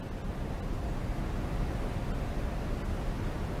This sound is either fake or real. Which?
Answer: real